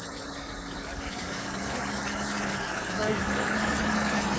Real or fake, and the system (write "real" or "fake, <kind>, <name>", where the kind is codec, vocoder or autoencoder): fake, codec, DAC